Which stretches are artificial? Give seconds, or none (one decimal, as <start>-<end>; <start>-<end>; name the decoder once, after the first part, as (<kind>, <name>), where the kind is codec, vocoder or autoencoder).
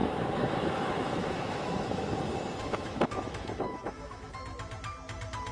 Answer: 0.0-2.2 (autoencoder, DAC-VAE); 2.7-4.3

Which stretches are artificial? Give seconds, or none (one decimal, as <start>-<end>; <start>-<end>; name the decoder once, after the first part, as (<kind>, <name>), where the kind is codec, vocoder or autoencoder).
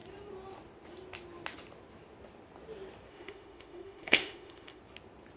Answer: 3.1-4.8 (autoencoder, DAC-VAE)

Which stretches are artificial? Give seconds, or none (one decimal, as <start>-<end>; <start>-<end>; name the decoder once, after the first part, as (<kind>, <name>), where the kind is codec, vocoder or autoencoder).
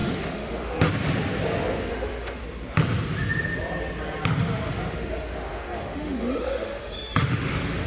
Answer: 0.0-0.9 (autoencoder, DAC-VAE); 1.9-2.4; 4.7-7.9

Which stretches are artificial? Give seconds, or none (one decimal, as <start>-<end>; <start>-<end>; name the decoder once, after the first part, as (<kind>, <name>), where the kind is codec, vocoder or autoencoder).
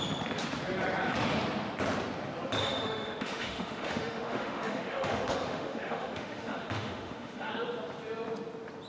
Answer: 2.6-7.5 (autoencoder, DAC-VAE)